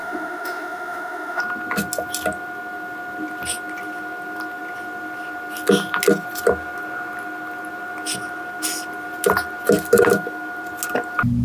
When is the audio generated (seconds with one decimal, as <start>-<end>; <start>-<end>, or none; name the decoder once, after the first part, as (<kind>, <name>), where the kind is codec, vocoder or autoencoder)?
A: 0.0-1.4 (autoencoder, DAC-VAE)

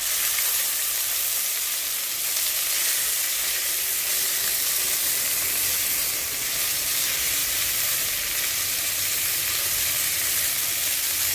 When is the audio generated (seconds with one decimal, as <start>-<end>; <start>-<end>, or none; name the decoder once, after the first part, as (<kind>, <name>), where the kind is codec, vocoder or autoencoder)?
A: 0.0-11.3 (vocoder, BigVGAN v2)

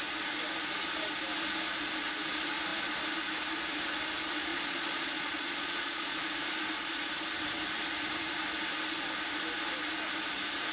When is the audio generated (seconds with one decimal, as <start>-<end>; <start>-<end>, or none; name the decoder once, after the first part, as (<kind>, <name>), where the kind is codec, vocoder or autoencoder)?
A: 4.5-6.1 (vocoder, Vocos)